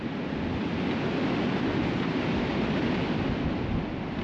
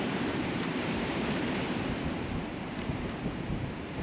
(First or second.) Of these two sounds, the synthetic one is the second